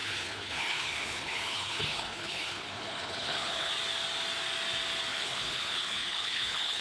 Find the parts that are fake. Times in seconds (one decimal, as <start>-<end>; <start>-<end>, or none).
0.0-3.7; 5.1-6.8